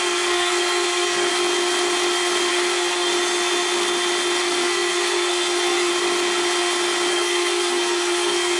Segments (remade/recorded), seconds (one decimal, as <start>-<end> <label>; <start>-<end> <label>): 0.0-1.3 remade; 1.3-2.5 recorded; 2.5-3.1 remade; 3.1-4.4 recorded; 4.4-5.9 remade; 5.9-7.1 recorded; 7.1-8.6 remade